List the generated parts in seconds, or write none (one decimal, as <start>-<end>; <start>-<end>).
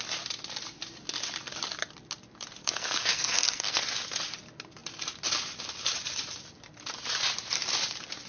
2.6-3.8